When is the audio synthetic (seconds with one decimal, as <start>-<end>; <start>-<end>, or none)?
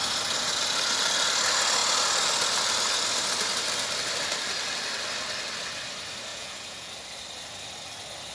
6.3-6.9